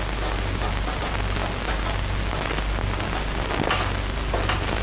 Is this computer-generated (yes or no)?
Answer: no